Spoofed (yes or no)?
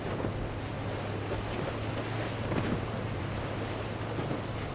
no